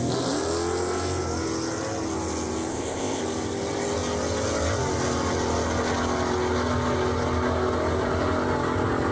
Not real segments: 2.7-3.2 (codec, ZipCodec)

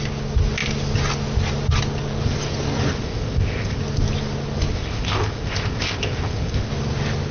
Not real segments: 3.0-3.8 (codec, ZipCodec); 4.7-6.7

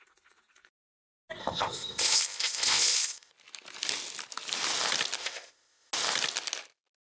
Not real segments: 1.4-3.3 (codec, ZipCodec); 5.2-5.9

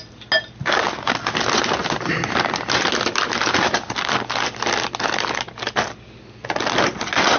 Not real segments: none

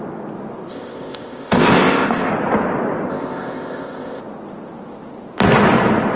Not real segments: 0.7-2.3 (codec, ZipCodec); 3.1-4.2

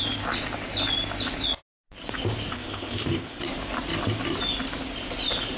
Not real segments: 2.5-3.4 (codec, ZipCodec)

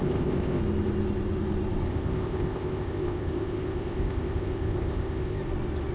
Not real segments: 0.0-0.6 (codec, ZipCodec); 1.9-5.4